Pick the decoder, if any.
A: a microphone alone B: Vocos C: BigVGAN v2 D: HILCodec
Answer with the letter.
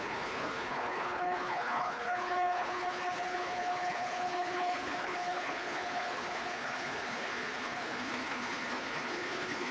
D